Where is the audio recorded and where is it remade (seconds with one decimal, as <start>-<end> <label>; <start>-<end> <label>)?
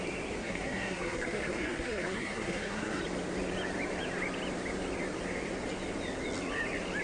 0.0-0.4 recorded; 0.4-3.0 remade; 3.0-7.0 recorded